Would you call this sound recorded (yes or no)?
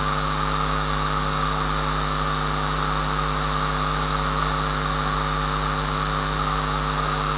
yes